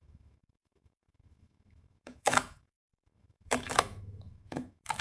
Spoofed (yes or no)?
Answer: yes